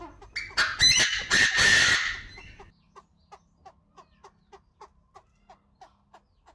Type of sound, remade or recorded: recorded